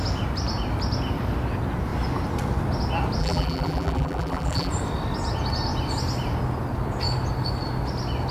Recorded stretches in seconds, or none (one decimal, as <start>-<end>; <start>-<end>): 0.0-3.2; 4.7-8.3